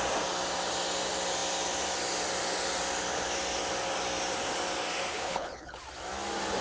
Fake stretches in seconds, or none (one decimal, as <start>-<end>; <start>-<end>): 5.1-5.8